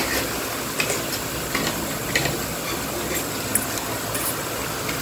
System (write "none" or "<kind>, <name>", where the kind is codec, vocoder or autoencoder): none